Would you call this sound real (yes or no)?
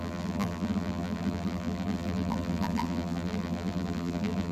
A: no